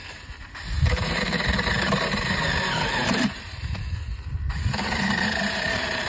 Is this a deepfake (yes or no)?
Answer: yes